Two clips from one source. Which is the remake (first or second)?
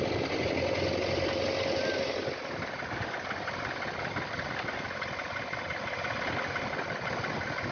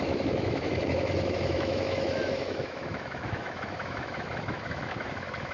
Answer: second